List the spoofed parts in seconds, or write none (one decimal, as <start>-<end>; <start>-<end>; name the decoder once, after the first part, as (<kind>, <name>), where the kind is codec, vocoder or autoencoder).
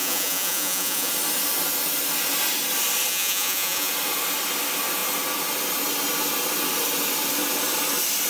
0.0-1.1 (vocoder, Vocos); 3.1-3.9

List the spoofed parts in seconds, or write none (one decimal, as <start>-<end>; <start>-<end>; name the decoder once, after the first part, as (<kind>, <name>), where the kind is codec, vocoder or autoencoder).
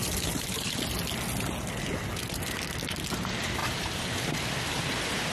0.0-0.7 (vocoder, BigVGAN v2); 3.6-4.2